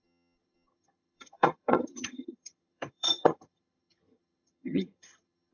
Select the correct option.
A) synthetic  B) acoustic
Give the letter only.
A